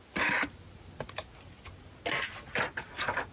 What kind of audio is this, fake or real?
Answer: real